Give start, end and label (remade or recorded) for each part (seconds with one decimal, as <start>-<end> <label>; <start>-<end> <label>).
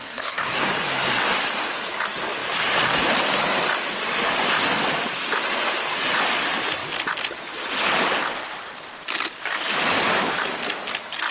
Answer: 0.0-0.7 remade; 0.7-11.3 recorded